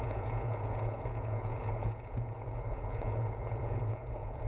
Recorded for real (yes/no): no